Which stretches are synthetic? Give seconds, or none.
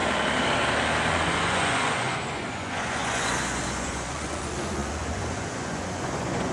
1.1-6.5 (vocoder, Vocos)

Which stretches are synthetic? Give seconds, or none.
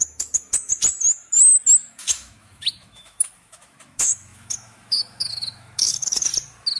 0.0-0.7 (autoencoder, DAC-VAE); 1.9-6.3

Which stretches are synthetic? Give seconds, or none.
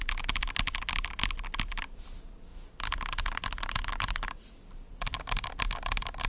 none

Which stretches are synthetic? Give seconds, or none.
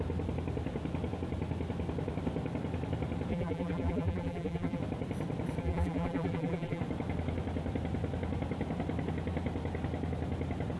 3.3-4.8 (vocoder, BigVGAN v2); 5.6-6.8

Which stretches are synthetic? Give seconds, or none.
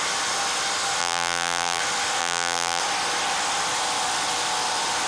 1.0-1.8 (vocoder, BigVGAN v2); 2.2-2.8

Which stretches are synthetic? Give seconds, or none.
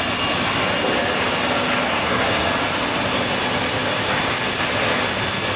1.9-2.5 (codec, SNAC)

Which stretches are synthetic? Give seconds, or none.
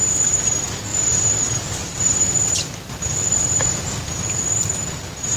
0.9-4.1 (vocoder, BigVGAN v2)